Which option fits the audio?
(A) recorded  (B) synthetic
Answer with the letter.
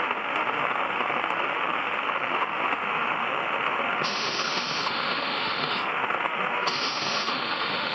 B